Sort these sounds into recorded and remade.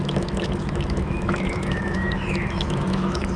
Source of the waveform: remade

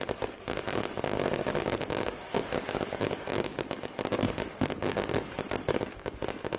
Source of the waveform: remade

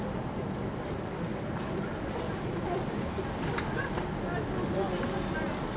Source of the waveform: recorded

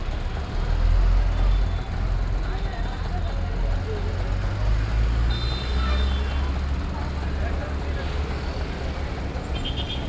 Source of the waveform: recorded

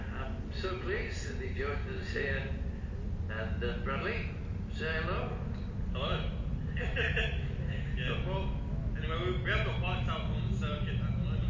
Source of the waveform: recorded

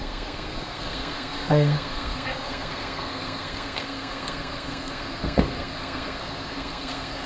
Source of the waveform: remade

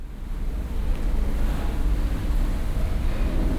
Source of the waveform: recorded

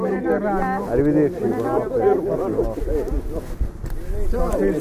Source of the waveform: recorded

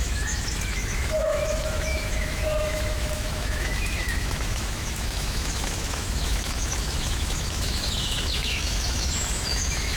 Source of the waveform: remade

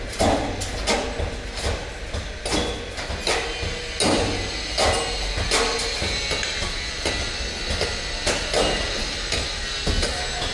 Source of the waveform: recorded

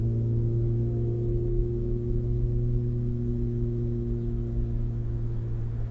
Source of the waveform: remade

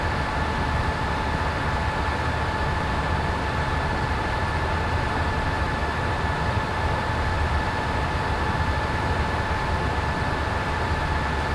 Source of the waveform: recorded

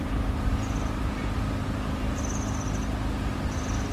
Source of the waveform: recorded